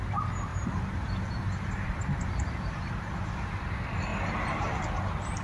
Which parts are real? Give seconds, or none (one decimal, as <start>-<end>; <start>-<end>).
0.0-0.5; 3.6-4.1; 4.8-5.4